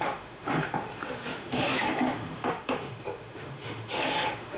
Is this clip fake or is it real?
fake